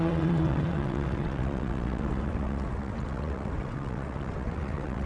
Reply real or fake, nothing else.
fake